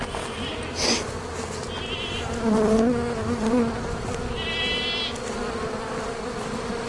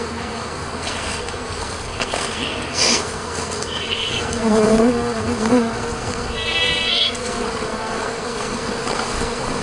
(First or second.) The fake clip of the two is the second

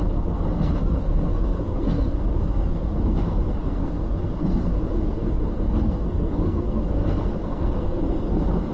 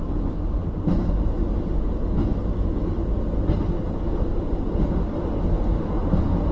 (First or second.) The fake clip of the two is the first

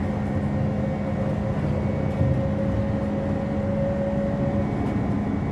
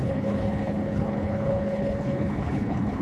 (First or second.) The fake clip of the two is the second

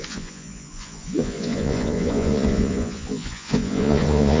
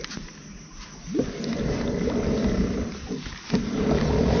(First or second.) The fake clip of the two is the first